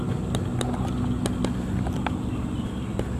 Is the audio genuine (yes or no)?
yes